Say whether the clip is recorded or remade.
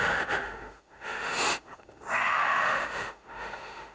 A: remade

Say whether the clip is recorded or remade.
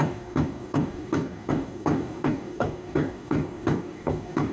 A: remade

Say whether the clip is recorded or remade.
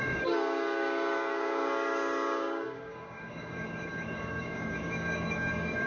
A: remade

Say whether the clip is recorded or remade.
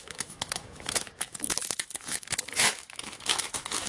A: remade